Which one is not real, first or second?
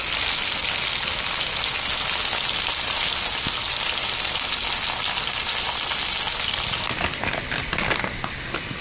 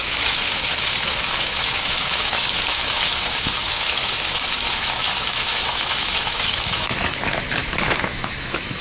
second